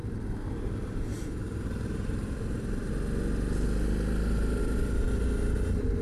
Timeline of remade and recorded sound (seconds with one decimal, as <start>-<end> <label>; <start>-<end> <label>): 0.0-2.9 remade; 2.9-6.0 recorded